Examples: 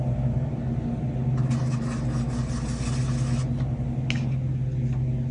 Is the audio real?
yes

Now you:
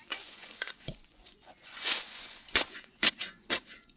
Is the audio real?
no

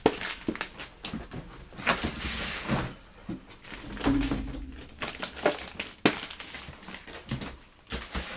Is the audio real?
yes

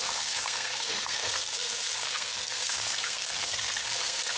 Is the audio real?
no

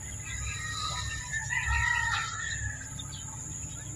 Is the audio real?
yes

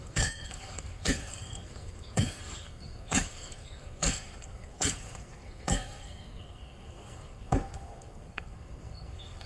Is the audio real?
no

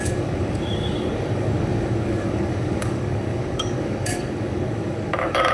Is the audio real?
no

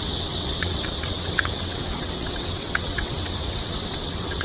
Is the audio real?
no